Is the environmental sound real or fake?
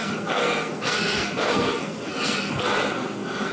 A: fake